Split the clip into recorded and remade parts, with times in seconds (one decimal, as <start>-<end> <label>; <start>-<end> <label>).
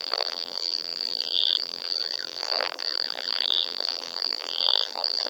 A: 0.0-5.3 remade